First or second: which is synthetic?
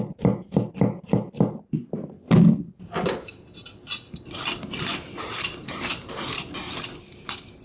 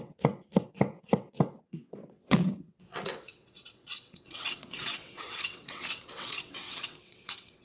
second